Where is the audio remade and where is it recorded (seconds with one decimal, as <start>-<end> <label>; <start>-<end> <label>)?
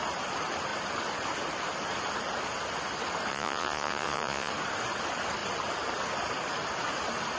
0.0-3.3 recorded; 3.3-4.5 remade; 4.5-7.4 recorded